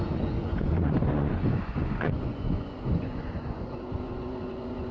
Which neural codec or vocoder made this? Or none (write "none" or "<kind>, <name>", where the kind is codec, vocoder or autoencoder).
vocoder, Vocos